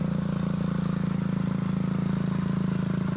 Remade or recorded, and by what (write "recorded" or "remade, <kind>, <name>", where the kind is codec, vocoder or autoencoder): recorded